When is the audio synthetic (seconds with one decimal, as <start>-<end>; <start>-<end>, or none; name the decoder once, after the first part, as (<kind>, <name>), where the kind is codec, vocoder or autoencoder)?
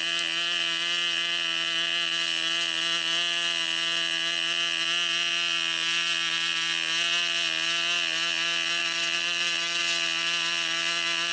8.8-9.8 (vocoder, BigVGAN v2)